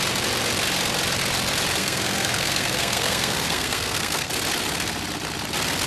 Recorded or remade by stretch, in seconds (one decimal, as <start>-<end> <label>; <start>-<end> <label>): 0.0-1.8 recorded; 1.8-4.3 remade; 4.3-5.9 recorded